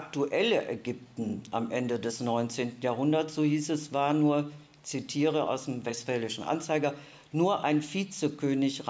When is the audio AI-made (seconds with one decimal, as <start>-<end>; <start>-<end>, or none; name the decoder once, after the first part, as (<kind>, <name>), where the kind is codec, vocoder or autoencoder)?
none